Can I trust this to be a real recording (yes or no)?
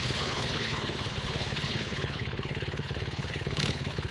no